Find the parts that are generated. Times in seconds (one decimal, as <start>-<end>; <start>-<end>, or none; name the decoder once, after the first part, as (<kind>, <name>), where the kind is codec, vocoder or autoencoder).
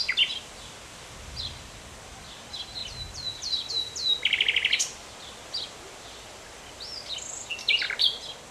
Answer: none